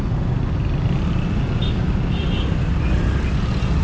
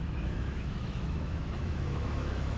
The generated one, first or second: second